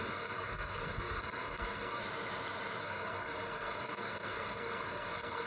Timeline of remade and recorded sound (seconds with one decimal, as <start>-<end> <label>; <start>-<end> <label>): 0.0-2.0 remade; 2.0-2.8 recorded; 2.8-5.5 remade